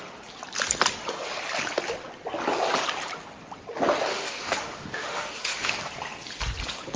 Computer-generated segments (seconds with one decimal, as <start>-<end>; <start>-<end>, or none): 4.1-5.7

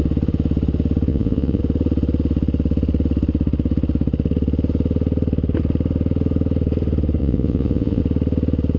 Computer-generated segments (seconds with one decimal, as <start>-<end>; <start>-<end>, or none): 1.1-1.6; 7.2-8.0